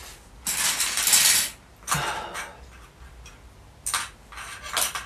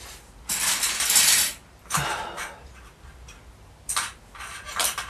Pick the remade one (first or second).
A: second